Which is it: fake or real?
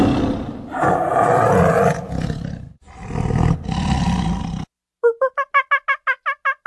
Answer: real